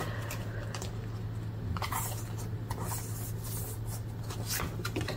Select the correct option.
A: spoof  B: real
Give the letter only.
B